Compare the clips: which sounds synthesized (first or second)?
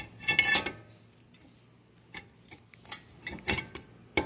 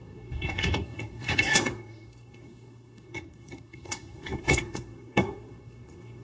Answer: second